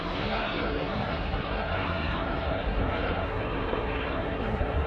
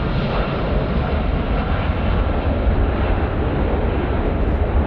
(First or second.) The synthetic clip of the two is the first